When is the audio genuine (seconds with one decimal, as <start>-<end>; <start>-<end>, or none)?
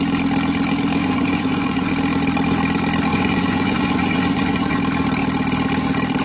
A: 0.0-1.0; 1.9-3.1; 4.8-6.2